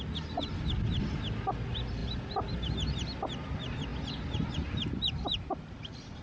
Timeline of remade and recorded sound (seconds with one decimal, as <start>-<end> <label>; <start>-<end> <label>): 0.0-6.2 recorded

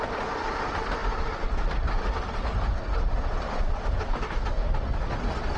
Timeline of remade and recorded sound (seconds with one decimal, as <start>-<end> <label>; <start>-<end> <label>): 0.0-5.6 recorded